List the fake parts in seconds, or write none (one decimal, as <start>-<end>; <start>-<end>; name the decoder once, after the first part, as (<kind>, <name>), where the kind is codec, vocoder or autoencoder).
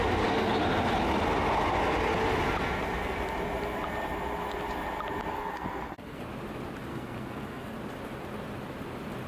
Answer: 5.3-6.2 (codec, SNAC); 6.9-7.7